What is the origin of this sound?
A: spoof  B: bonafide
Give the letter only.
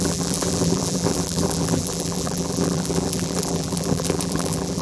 A